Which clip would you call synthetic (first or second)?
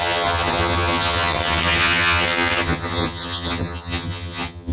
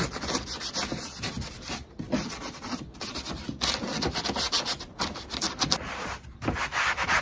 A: first